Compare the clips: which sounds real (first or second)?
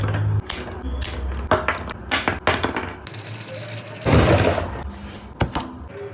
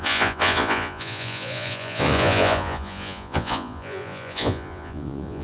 first